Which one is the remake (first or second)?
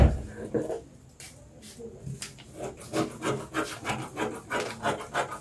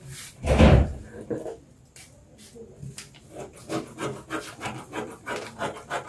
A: second